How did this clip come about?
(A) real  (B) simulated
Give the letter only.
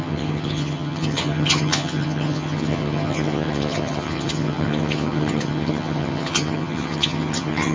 B